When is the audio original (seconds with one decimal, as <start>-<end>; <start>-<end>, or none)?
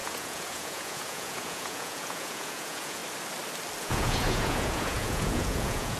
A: 3.0-3.8